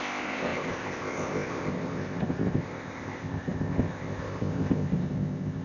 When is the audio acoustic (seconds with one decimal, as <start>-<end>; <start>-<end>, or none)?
none